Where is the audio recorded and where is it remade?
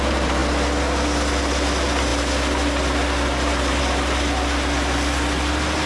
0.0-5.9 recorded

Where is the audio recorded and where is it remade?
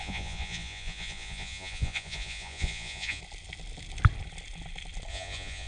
0.0-3.2 remade; 3.2-5.1 recorded; 5.1-5.7 remade